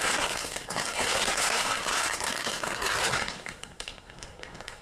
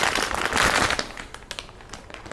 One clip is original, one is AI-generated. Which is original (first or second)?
second